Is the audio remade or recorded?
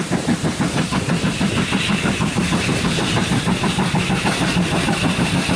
remade